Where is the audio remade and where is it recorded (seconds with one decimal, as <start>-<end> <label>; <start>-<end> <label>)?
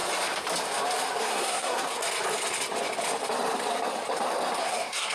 0.0-1.2 recorded; 1.2-2.0 remade; 2.0-4.6 recorded; 4.6-5.1 remade